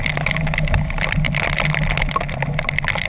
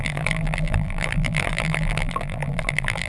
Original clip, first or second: first